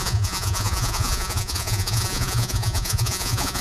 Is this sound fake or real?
fake